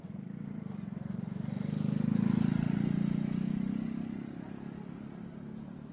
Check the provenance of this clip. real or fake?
real